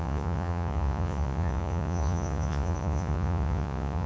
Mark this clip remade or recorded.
remade